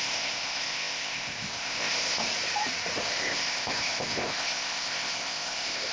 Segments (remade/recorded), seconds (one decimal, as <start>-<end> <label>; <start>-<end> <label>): 0.0-2.3 remade; 2.3-3.0 recorded; 3.0-5.9 remade